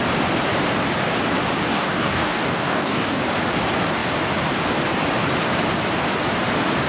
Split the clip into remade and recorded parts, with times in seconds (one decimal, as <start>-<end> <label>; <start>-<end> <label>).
0.0-1.7 recorded; 1.7-3.2 remade; 3.2-6.9 recorded